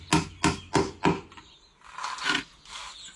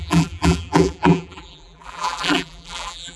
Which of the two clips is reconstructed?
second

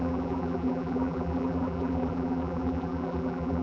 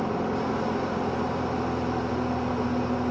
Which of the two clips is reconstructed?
first